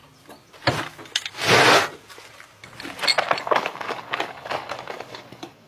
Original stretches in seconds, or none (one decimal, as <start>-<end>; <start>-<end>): 0.0-3.4